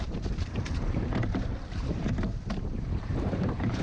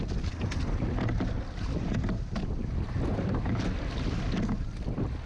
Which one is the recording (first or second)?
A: second